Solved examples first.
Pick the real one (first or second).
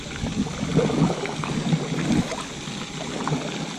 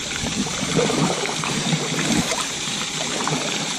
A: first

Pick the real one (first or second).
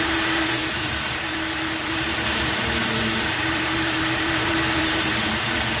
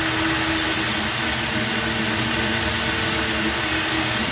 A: second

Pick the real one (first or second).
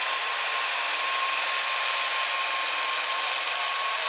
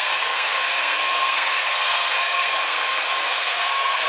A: first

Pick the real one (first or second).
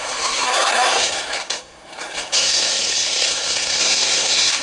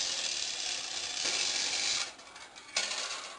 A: second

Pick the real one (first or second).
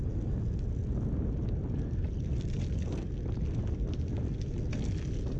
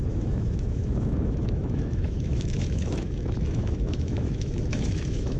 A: first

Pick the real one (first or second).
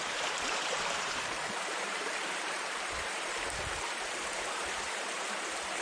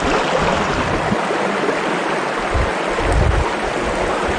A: second